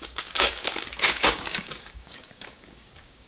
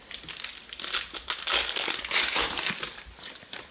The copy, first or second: first